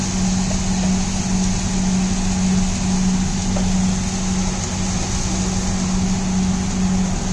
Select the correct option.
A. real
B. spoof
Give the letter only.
A